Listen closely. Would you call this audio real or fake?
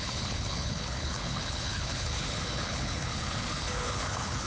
fake